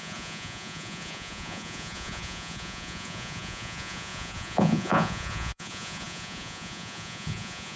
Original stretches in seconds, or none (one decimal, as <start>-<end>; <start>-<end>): none